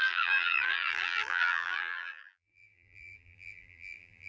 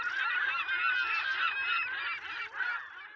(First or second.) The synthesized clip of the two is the first